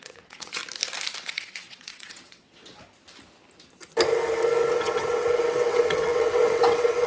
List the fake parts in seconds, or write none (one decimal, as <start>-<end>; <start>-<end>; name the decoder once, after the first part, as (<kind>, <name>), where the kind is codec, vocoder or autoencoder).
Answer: 0.0-0.6 (vocoder, WaveNeXt); 1.2-2.7; 4.7-7.1